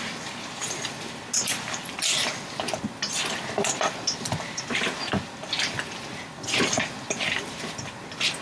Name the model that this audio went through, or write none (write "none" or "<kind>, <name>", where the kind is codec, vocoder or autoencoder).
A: none